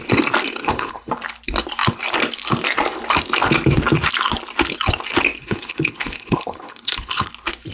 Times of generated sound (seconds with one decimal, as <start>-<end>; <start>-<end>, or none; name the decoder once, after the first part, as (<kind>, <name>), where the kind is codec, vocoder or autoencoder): 0.6-1.1 (codec, HILCodec); 5.4-7.3